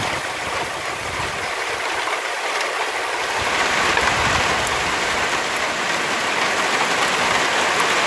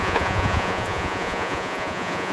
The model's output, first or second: second